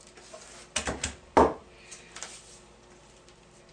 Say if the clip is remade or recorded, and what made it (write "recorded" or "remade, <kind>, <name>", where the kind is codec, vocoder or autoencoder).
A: recorded